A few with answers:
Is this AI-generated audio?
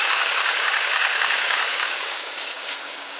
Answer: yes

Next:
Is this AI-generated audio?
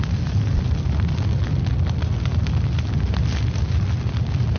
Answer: no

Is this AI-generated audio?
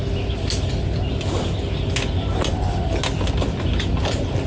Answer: no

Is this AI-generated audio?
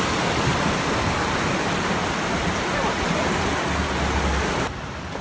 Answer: no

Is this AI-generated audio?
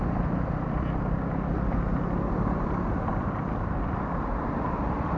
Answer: yes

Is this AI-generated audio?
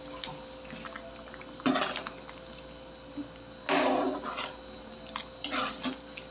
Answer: no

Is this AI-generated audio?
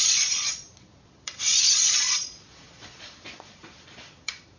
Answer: yes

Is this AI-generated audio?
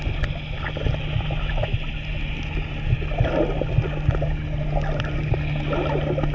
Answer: no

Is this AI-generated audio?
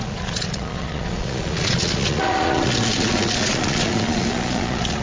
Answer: yes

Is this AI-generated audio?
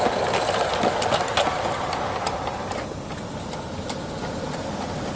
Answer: no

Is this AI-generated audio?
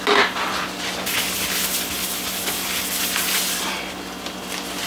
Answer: no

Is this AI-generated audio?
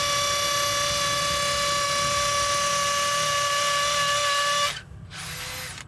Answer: no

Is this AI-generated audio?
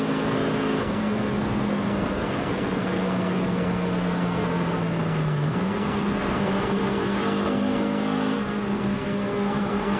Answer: yes